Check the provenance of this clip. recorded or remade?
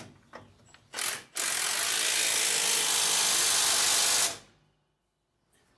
recorded